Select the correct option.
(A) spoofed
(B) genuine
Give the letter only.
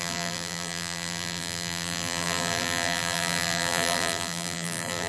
A